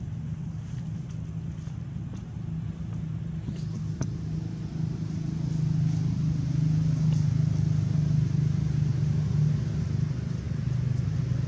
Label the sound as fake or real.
real